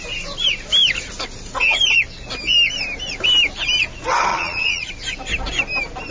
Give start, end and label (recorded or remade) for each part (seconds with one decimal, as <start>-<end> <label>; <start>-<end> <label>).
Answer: 0.0-4.3 recorded; 4.3-4.9 remade; 4.9-6.1 recorded